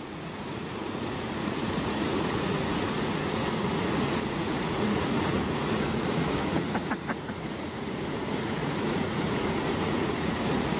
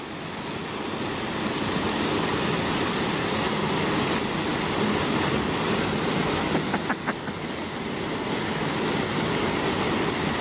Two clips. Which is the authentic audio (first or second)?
second